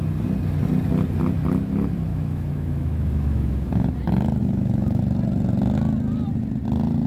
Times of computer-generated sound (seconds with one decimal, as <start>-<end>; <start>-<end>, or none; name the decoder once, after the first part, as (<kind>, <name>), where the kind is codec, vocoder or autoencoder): 2.1-3.9 (autoencoder, DAC-VAE); 4.4-5.0